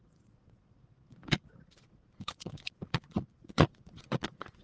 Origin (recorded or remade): remade